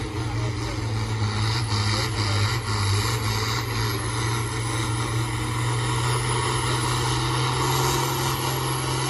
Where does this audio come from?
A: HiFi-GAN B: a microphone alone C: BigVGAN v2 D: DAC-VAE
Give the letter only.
B